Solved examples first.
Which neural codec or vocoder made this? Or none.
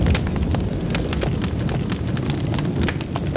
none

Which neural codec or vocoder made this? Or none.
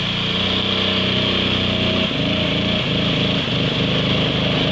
none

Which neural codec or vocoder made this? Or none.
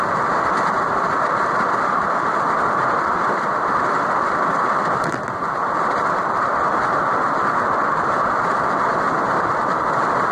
none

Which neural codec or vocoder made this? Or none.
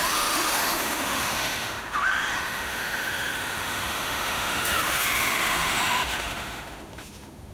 autoencoder, DAC-VAE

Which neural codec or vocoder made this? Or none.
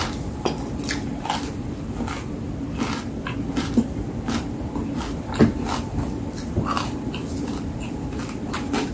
none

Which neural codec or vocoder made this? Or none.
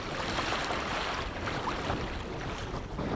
none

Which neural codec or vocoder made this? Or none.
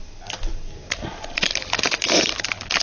none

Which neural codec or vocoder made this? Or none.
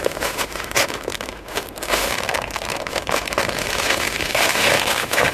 autoencoder, DAC-VAE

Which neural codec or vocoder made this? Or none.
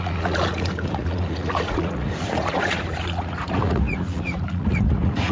vocoder, Vocos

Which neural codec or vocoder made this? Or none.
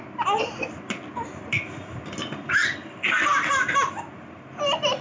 none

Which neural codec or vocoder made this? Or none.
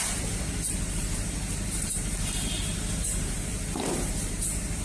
vocoder, BigVGAN v2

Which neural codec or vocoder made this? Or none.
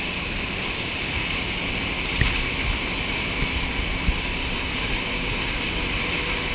none